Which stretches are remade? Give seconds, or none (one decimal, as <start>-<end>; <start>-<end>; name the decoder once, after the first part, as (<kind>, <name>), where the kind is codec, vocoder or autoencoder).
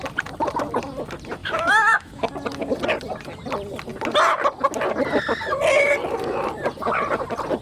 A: 1.4-2.3 (autoencoder, DAC-VAE)